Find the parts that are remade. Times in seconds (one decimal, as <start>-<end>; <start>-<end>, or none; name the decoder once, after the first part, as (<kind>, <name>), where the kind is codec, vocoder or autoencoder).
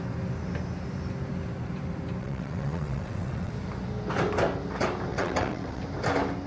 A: 2.2-3.5 (vocoder, WaveNeXt); 5.1-5.8